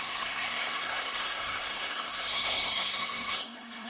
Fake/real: fake